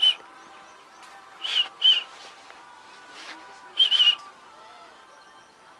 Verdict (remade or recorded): recorded